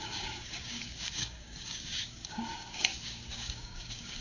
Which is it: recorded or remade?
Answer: remade